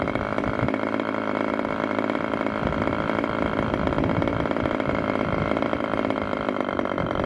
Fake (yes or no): yes